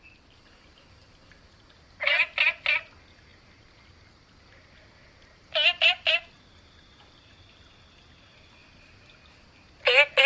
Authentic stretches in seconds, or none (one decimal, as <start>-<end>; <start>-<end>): 0.0-10.3